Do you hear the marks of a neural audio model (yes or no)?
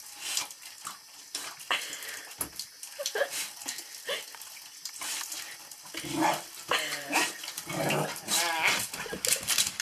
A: no